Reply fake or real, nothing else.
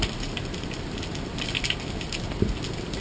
real